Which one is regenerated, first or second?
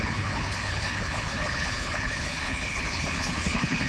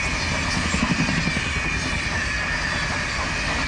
first